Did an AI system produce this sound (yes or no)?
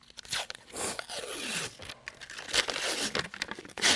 no